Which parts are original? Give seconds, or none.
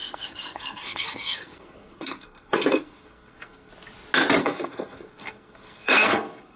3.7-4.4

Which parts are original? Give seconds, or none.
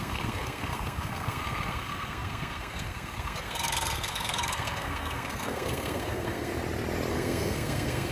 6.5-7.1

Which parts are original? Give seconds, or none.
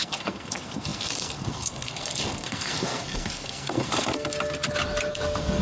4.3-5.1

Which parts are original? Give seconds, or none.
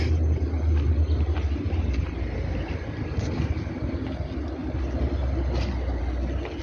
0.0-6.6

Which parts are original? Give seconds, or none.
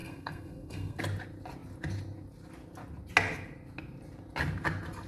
1.0-5.1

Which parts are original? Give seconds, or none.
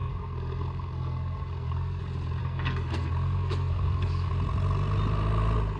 2.0-2.4; 4.3-5.8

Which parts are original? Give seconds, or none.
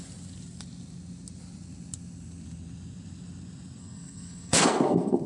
0.0-3.8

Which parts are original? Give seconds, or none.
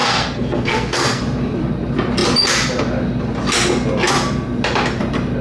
1.2-5.4